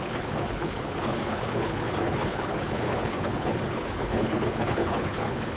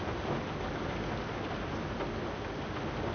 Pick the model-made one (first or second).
first